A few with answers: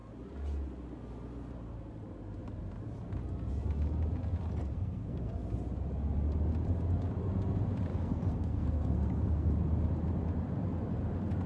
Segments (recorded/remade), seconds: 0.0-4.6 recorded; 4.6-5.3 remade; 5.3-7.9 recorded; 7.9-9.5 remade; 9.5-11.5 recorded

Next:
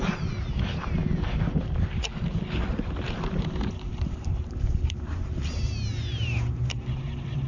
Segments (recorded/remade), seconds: 0.0-1.0 remade; 1.0-3.0 recorded; 3.0-7.5 remade

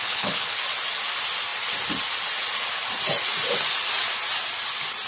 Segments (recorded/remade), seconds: 0.0-0.6 remade; 0.6-5.1 recorded

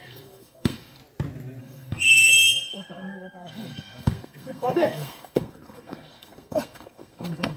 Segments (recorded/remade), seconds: 0.0-1.0 remade; 1.0-1.6 recorded; 1.6-7.6 remade

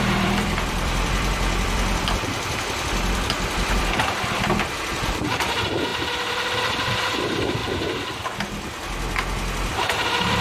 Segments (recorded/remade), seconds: 0.0-7.6 remade; 7.6-9.7 recorded; 9.7-10.4 remade

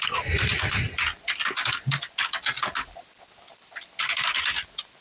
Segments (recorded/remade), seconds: 0.0-5.0 recorded

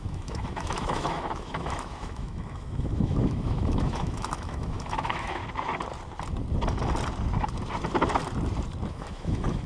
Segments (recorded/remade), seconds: 0.0-5.4 remade; 5.4-8.9 recorded; 8.9-9.7 remade